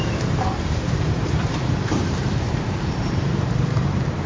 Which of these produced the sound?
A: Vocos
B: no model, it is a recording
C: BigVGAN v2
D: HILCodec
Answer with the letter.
C